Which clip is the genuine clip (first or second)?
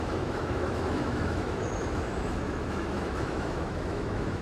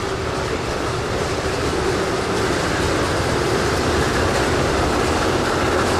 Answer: second